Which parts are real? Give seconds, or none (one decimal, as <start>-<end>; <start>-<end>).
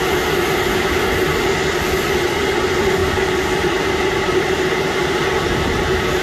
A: 0.0-3.0; 5.1-6.2